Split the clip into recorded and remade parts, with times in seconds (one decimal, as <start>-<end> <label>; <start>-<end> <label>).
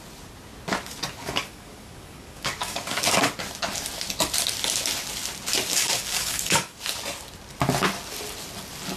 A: 0.0-1.2 recorded; 1.2-3.3 remade; 3.3-5.7 recorded; 5.7-6.8 remade; 6.8-9.0 recorded